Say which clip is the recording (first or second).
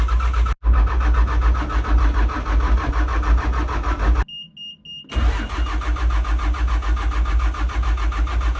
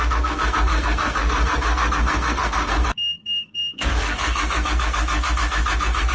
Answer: first